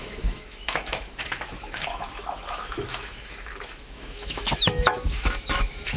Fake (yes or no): yes